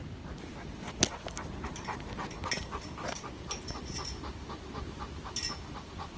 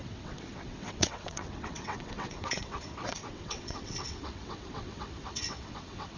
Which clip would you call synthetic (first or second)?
second